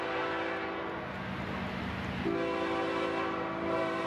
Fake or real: real